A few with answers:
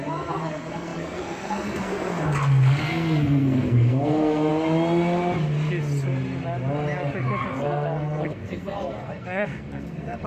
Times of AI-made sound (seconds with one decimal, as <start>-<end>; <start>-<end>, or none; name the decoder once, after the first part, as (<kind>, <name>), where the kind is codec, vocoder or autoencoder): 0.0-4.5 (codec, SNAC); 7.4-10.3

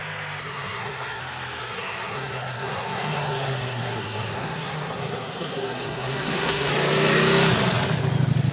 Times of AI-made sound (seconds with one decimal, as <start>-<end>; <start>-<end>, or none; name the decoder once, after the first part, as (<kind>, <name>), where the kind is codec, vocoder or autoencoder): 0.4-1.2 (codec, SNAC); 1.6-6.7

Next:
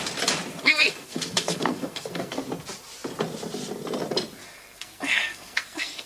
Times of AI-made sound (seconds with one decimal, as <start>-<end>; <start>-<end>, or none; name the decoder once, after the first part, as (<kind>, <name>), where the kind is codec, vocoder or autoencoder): 0.5-2.4 (codec, SNAC); 4.4-6.1

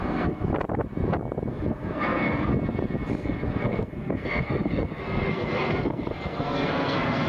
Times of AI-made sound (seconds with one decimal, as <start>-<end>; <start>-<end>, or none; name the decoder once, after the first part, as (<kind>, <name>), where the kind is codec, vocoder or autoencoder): 0.0-0.5 (codec, SNAC); 1.5-2.5; 3.1-7.3

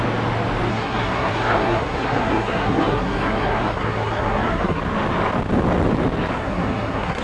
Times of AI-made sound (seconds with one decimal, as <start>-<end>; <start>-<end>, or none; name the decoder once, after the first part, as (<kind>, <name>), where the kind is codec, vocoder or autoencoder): 0.7-4.8 (codec, SNAC); 6.3-7.2

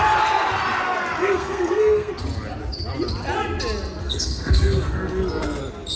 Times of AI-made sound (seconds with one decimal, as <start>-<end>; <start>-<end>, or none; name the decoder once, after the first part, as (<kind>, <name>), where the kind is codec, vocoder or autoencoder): 1.2-2.1 (codec, SNAC); 4.0-5.6